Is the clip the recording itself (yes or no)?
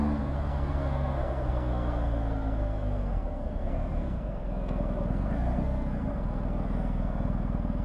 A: no